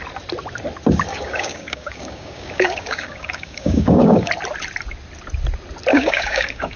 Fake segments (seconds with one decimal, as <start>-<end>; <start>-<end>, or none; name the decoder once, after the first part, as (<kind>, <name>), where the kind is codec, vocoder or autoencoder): 1.1-4.3 (codec, DAC); 5.9-6.8